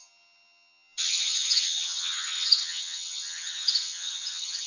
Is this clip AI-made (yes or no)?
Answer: yes